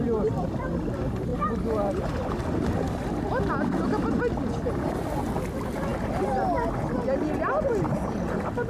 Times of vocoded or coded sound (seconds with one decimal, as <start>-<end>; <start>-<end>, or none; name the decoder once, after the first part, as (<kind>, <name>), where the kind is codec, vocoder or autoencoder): 1.3-3.5 (vocoder, BigVGAN v2)